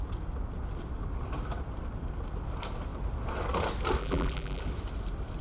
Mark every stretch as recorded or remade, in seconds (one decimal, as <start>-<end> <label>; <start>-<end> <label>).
0.0-4.0 recorded; 4.0-4.6 remade; 4.6-5.4 recorded